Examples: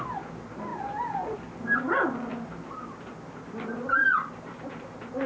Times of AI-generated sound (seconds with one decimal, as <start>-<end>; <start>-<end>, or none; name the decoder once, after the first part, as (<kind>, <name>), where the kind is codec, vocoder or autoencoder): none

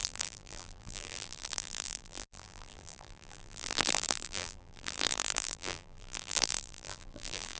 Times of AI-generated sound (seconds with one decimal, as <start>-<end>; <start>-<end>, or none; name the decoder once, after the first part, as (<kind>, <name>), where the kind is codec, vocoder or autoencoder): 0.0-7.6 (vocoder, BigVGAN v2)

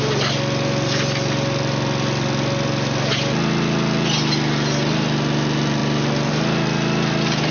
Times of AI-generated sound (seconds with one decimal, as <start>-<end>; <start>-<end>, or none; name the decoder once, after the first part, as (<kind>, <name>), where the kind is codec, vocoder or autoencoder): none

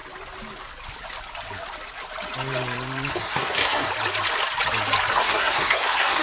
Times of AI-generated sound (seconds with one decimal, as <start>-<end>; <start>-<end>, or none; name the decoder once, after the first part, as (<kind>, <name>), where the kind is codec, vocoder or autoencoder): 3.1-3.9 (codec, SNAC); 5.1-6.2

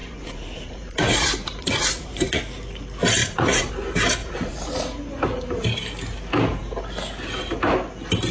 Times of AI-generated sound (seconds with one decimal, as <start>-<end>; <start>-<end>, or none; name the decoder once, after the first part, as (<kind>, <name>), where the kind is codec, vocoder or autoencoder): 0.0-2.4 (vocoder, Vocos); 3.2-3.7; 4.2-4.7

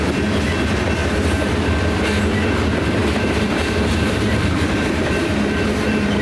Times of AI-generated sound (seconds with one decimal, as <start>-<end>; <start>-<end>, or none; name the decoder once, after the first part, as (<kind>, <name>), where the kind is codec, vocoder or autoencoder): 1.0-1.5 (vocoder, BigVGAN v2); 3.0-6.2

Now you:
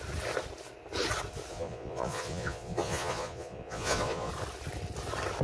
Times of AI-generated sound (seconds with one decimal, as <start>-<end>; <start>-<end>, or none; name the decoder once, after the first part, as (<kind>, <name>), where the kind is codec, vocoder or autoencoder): 1.5-4.3 (vocoder, Vocos)